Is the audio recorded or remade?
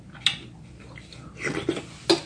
recorded